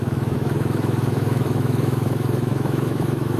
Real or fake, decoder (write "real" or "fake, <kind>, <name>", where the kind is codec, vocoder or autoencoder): fake, autoencoder, DAC-VAE